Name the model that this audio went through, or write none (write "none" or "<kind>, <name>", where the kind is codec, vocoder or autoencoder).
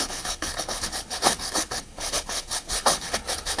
codec, HILCodec